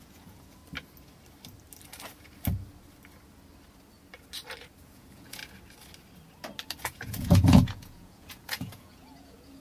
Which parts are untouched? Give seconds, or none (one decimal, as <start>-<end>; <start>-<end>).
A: 0.6-4.8; 5.4-6.8